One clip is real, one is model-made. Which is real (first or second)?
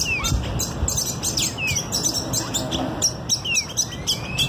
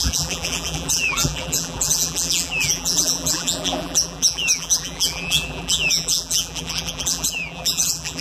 first